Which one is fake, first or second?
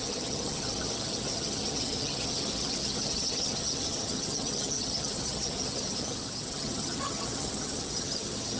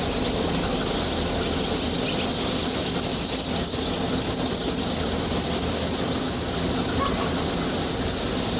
first